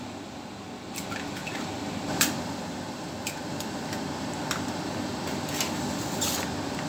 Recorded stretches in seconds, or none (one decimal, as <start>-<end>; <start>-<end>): 0.0-1.4; 4.0-6.9